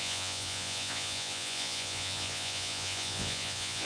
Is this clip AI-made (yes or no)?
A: yes